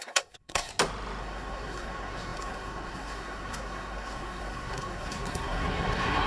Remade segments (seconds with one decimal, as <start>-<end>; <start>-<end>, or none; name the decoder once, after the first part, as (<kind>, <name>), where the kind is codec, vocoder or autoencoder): 0.0-0.7 (codec, SNAC); 1.2-6.3